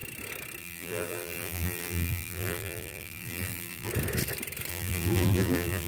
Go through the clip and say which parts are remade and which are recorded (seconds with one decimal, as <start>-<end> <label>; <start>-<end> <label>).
0.0-0.6 recorded; 0.6-3.9 remade; 3.9-4.7 recorded; 4.7-5.9 remade